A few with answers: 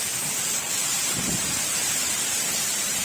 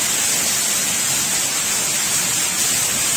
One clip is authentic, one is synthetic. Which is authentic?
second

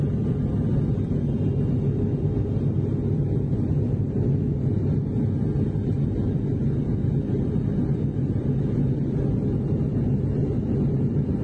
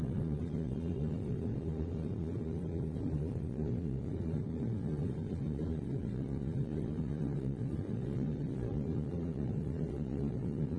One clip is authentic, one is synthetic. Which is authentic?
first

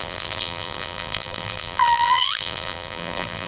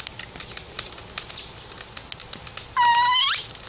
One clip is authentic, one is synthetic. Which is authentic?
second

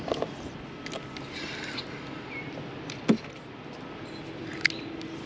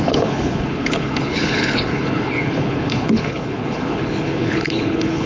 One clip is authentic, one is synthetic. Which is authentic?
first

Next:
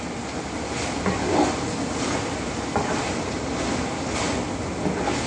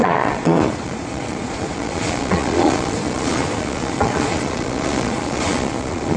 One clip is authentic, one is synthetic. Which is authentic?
first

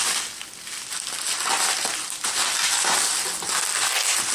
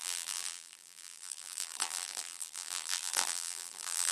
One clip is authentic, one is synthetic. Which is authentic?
first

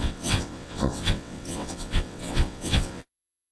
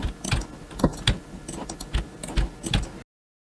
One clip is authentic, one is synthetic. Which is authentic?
second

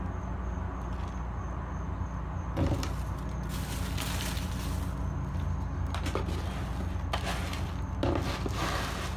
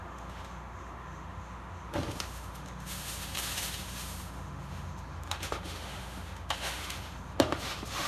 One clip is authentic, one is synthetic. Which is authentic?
first